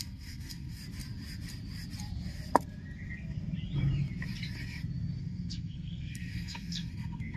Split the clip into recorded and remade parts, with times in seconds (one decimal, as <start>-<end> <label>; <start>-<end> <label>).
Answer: 0.0-0.8 remade; 0.8-5.2 recorded; 5.2-7.4 remade